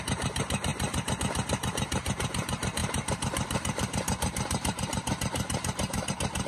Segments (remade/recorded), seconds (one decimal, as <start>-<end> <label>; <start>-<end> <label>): 0.0-6.5 remade